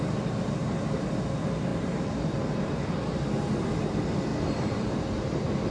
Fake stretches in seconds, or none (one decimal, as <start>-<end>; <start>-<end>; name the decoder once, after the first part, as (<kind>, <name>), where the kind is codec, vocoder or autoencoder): 0.6-1.1 (vocoder, BigVGAN v2); 1.7-3.0; 4.3-5.7